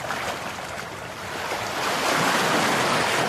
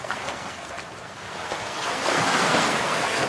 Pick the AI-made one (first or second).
second